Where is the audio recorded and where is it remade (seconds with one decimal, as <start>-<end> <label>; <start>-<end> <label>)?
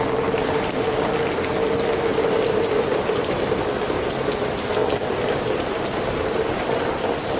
0.0-4.8 recorded; 4.8-6.7 remade; 6.7-7.4 recorded